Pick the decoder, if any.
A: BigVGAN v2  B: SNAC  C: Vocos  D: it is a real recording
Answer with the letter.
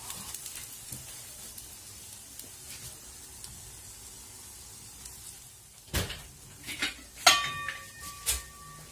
D